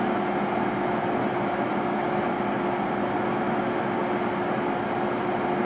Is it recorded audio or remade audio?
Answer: recorded